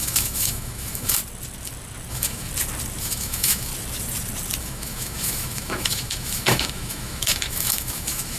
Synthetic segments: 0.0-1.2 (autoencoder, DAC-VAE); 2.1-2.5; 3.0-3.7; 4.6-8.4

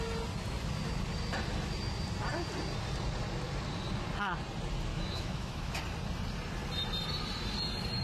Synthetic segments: 4.9-5.8 (autoencoder, DAC-VAE)

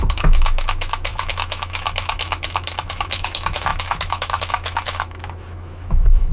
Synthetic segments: 0.0-6.3 (autoencoder, DAC-VAE)